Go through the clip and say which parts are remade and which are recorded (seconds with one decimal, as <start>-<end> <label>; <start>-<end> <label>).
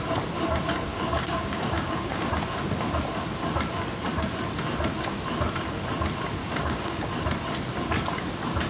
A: 0.0-0.9 recorded; 0.9-2.3 remade; 2.3-6.4 recorded; 6.4-7.1 remade; 7.1-8.7 recorded